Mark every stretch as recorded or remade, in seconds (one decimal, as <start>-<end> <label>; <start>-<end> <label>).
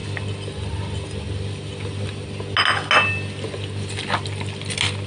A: 0.0-5.1 recorded